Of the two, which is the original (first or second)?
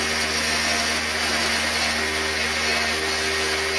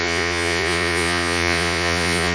first